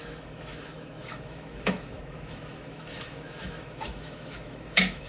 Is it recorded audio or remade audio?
remade